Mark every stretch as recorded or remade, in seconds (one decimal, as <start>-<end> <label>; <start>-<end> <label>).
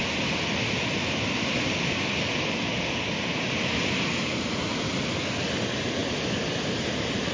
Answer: 0.0-7.3 recorded